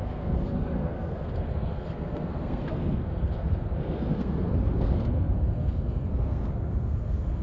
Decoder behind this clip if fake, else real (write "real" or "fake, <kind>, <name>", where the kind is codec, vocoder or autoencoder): fake, codec, SNAC